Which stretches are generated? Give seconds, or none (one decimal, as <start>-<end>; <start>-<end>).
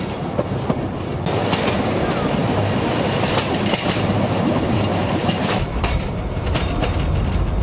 4.9-6.7